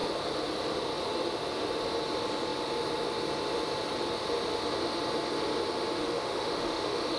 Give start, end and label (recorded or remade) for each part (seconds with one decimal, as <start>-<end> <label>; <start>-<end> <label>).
0.0-6.0 recorded; 6.0-7.2 remade